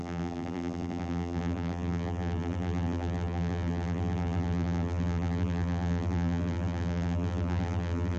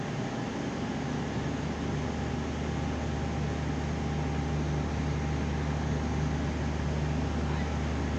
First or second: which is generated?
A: first